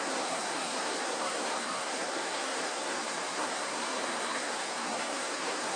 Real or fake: fake